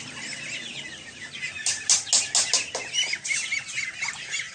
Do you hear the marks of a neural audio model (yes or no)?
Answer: no